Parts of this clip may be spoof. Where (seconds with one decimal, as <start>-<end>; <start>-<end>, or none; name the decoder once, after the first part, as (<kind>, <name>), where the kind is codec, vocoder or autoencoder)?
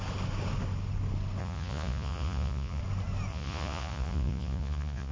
1.4-2.8 (vocoder, Vocos); 3.3-5.1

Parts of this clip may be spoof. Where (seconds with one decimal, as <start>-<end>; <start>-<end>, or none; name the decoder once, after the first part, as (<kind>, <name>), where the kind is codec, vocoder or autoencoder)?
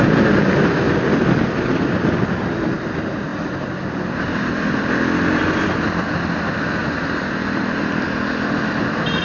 none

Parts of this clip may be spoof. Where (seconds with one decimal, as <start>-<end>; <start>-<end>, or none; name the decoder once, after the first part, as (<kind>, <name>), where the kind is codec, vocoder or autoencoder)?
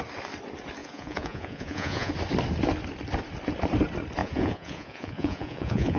0.8-2.1 (vocoder, Vocos); 4.2-6.0